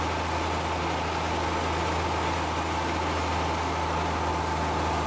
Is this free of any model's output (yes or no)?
yes